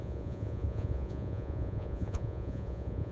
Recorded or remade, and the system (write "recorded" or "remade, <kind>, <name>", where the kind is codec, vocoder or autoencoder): remade, vocoder, Vocos